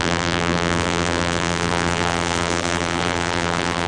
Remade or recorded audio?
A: remade